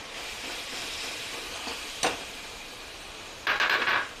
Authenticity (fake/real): fake